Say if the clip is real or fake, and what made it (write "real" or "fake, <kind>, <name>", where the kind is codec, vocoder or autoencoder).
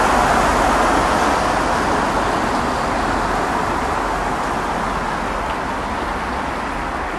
real